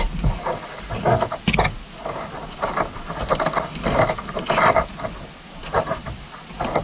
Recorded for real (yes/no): yes